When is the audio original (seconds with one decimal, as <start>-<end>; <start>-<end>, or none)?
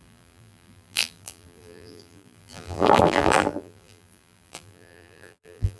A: none